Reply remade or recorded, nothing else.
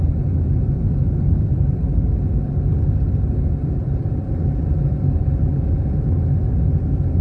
recorded